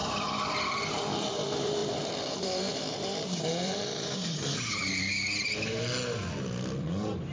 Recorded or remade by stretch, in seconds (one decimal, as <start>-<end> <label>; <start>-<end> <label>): 0.0-1.3 recorded; 1.3-5.1 remade; 5.1-7.3 recorded